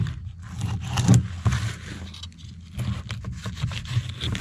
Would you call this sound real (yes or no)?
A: yes